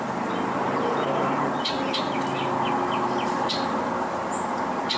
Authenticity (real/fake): real